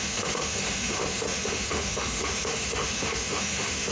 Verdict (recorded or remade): remade